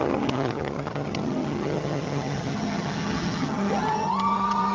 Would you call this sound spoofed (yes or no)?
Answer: yes